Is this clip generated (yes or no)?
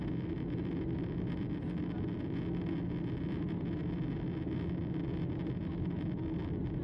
no